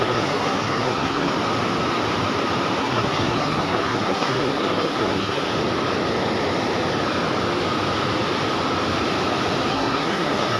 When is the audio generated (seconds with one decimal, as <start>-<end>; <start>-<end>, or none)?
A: 0.0-1.3; 2.8-5.5; 9.7-10.6